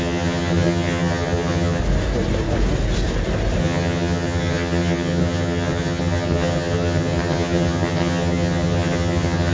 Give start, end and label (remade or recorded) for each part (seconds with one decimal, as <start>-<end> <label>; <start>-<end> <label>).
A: 0.0-1.8 remade; 1.8-3.6 recorded; 3.6-9.5 remade

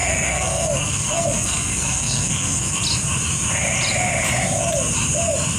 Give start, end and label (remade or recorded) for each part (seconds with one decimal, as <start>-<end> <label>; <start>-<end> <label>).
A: 0.0-2.8 remade; 2.8-5.6 recorded

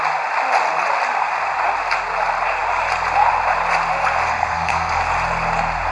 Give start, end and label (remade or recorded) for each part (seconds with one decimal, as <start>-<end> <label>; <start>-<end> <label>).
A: 0.0-4.3 recorded; 4.3-5.0 remade; 5.0-5.9 recorded

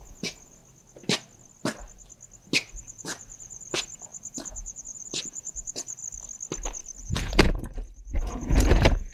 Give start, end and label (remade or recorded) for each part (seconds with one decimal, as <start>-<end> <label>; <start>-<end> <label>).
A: 0.0-0.6 remade; 0.6-2.7 recorded; 2.7-6.0 remade; 6.0-7.0 recorded; 7.0-9.1 remade

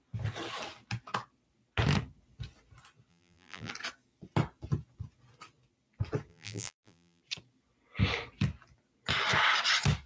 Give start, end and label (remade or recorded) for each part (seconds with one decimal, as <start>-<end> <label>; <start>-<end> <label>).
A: 0.0-3.1 recorded; 3.1-3.7 remade; 3.7-6.3 recorded; 6.3-7.2 remade; 7.2-10.1 recorded